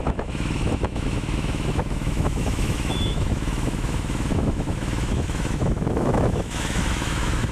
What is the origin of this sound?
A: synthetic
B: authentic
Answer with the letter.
A